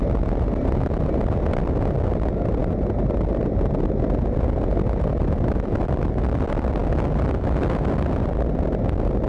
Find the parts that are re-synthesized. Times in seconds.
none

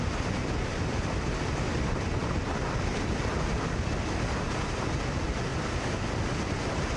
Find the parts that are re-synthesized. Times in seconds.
0.9-4.5 (vocoder, BigVGAN v2); 5.5-7.0

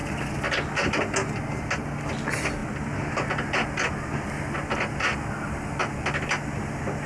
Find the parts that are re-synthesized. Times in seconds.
none

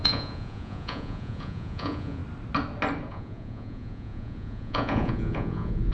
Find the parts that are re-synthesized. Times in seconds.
0.0-2.2 (vocoder, Vocos); 3.1-5.9